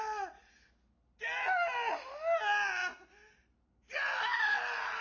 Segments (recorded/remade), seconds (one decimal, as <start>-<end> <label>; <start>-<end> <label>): 0.0-5.0 recorded